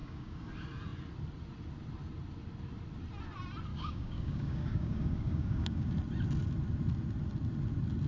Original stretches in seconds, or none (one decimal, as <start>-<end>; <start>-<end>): 0.5-3.7; 5.9-8.1